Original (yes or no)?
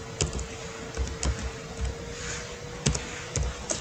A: yes